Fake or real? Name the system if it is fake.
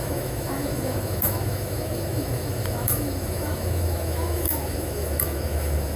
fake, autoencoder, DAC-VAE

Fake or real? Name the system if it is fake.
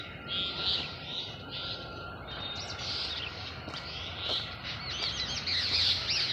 real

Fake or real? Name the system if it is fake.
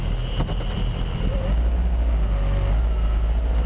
real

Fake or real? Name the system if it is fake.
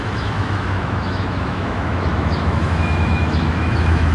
fake, autoencoder, DAC-VAE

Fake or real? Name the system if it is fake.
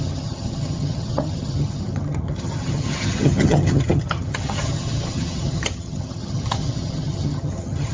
fake, vocoder, HiFi-GAN